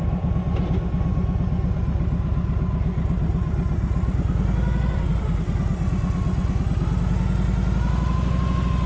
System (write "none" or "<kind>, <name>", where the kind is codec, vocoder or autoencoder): none